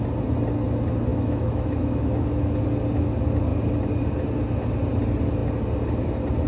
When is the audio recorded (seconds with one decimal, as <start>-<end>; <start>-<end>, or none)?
0.0-1.1; 2.6-6.5